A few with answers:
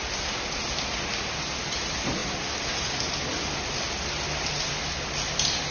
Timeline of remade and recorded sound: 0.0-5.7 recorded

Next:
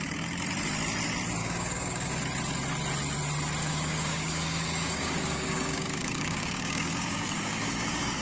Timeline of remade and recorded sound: 0.0-1.4 recorded; 1.4-2.1 remade; 2.1-3.6 recorded; 3.6-8.2 remade

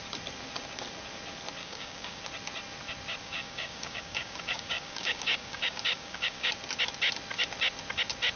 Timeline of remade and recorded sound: 0.0-1.6 recorded; 1.6-2.2 remade; 2.2-3.2 recorded; 3.2-6.5 remade; 6.5-8.4 recorded

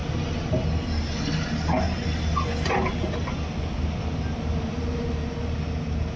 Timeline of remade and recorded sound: 0.0-6.2 recorded

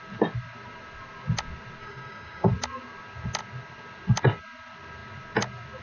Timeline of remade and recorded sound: 0.0-1.8 recorded; 1.8-2.5 remade; 2.5-5.8 recorded

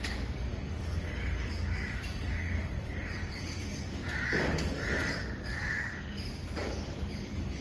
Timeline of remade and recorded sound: 0.0-7.6 remade